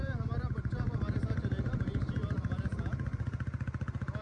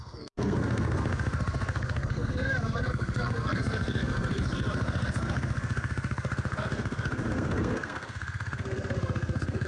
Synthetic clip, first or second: second